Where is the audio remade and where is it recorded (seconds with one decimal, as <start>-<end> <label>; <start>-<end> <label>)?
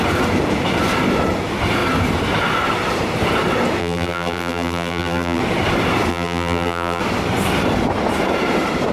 0.0-3.8 recorded; 3.8-5.4 remade; 5.4-6.1 recorded; 6.1-7.0 remade; 7.0-8.9 recorded